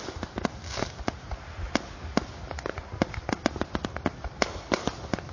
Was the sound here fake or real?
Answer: real